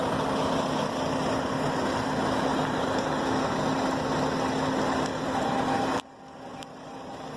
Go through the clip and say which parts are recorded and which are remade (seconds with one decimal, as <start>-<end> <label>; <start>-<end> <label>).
0.0-2.5 recorded; 2.5-3.1 remade; 3.1-5.1 recorded; 5.1-6.0 remade; 6.0-6.5 recorded; 6.5-7.4 remade